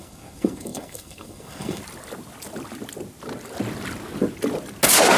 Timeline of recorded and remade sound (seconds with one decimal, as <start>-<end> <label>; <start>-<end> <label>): 0.0-1.8 remade; 1.8-5.2 recorded